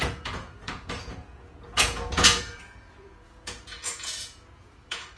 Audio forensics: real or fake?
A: fake